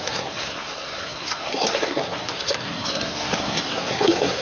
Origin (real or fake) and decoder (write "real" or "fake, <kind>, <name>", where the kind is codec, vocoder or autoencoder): fake, codec, SNAC